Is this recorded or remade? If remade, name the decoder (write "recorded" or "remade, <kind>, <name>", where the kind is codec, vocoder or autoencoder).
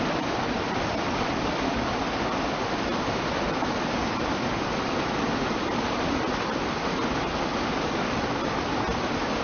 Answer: recorded